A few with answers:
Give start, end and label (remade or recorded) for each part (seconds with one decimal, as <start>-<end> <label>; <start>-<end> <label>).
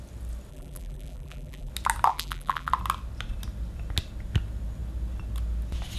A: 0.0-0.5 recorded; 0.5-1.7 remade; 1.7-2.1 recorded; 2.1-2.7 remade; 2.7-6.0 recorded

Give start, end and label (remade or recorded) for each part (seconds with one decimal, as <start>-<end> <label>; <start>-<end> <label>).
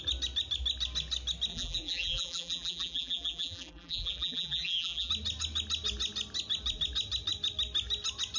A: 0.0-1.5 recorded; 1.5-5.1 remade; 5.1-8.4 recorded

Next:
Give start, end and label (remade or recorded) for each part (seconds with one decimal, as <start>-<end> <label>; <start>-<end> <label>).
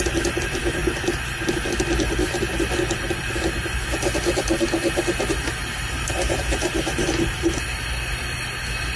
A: 0.0-5.6 recorded; 5.6-7.1 remade; 7.1-9.0 recorded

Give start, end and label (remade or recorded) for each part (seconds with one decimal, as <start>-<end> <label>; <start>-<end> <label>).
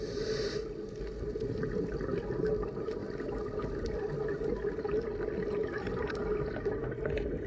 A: 0.0-7.5 recorded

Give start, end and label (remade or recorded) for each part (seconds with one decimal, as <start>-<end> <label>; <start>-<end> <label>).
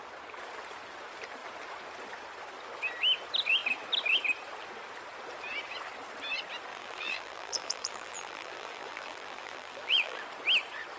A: 0.0-6.7 recorded; 6.7-10.2 remade; 10.2-11.0 recorded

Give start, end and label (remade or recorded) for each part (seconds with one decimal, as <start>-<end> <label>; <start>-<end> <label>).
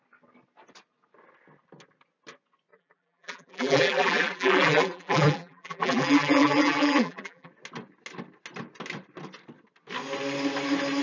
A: 0.0-2.7 recorded; 2.7-7.5 remade; 7.5-11.0 recorded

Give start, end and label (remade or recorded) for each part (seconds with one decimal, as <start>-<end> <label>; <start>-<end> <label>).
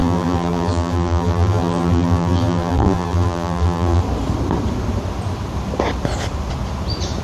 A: 0.0-4.0 remade; 4.0-7.2 recorded